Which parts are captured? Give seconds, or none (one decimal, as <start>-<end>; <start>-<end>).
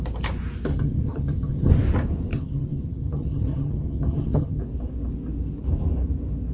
0.0-0.7; 1.7-2.3; 4.6-6.5